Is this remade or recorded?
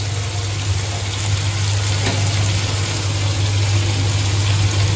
recorded